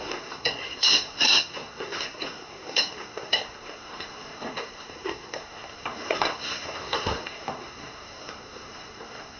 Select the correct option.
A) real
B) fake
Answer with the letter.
B